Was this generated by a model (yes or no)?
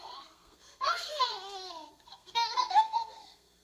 yes